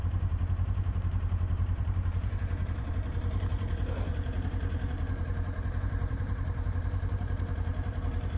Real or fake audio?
fake